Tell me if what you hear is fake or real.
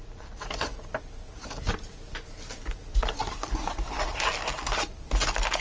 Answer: real